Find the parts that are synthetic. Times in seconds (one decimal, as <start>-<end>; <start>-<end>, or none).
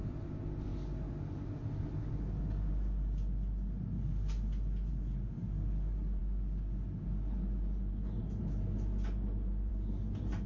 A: none